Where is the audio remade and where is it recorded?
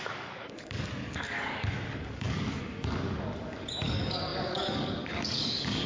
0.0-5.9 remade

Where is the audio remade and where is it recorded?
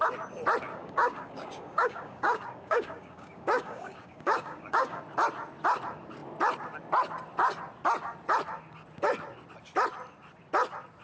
0.0-0.7 recorded; 0.7-5.0 remade; 5.0-11.0 recorded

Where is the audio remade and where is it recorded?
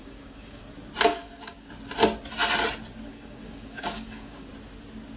0.0-0.6 remade; 0.6-1.1 recorded; 1.1-1.7 remade; 1.7-3.1 recorded; 3.1-4.5 remade; 4.5-5.2 recorded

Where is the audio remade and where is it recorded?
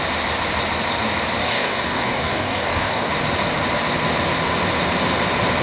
0.0-1.4 recorded; 1.4-3.1 remade; 3.1-5.6 recorded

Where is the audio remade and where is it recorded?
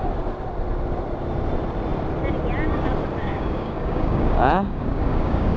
0.0-3.2 recorded; 3.2-5.6 remade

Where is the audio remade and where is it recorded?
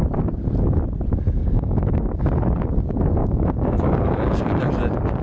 0.0-1.4 recorded; 1.4-2.2 remade; 2.2-3.2 recorded; 3.2-4.7 remade; 4.7-5.2 recorded